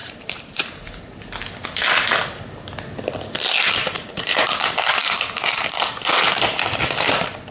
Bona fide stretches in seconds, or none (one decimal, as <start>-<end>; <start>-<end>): 1.0-3.8; 4.5-7.5